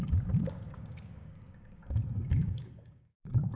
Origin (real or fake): fake